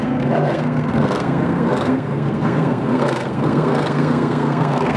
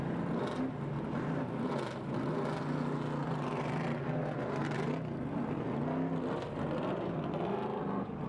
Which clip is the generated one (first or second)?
first